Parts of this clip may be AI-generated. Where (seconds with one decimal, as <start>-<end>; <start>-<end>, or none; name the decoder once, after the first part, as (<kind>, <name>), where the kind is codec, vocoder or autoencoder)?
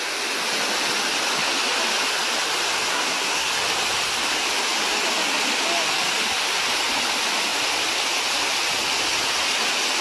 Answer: 2.9-3.5 (codec, SNAC)